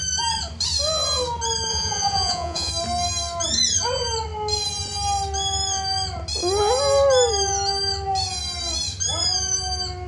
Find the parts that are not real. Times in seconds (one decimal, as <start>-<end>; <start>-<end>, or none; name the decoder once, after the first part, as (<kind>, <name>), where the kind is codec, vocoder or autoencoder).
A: 1.7-2.7 (vocoder, Vocos)